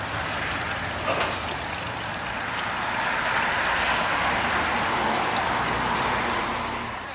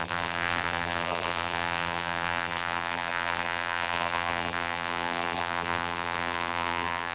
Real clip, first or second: first